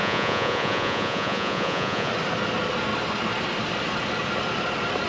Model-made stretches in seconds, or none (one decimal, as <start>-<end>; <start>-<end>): 0.0-2.1